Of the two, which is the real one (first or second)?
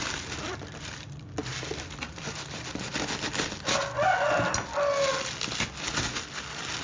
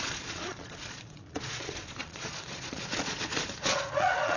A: first